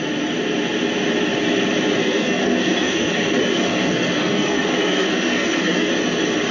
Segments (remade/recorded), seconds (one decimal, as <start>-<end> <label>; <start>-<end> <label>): 0.0-2.0 recorded; 2.0-5.9 remade; 5.9-6.5 recorded